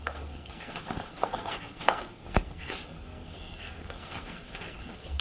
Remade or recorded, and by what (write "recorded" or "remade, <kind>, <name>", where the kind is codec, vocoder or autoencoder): remade, codec, SNAC